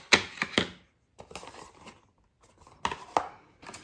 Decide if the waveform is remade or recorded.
recorded